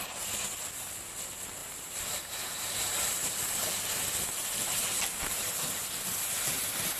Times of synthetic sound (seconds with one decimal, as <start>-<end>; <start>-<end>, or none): 1.6-5.8